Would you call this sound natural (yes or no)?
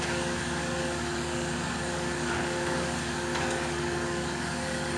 no